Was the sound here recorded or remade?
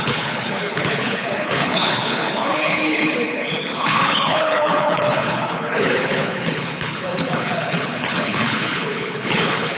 remade